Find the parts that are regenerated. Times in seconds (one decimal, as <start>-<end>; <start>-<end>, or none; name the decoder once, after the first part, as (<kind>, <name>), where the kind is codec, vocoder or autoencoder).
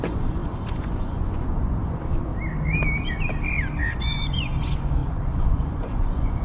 0.0-2.3 (vocoder, Vocos); 3.9-6.4